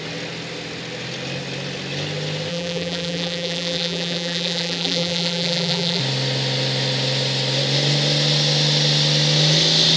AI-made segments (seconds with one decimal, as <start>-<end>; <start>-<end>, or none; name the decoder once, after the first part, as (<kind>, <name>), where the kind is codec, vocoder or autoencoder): 2.5-6.0 (vocoder, BigVGAN v2)